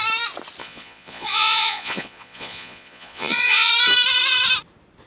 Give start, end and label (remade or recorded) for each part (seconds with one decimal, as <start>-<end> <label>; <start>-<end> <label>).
0.0-0.6 recorded; 0.6-3.7 remade; 3.7-5.1 recorded